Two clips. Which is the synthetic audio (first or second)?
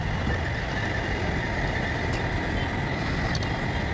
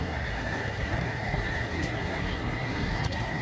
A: second